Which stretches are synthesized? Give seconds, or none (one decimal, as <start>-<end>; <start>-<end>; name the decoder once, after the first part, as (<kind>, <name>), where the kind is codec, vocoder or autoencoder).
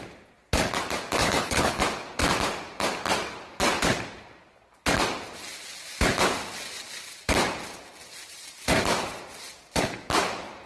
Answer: 1.2-1.8 (codec, HILCodec)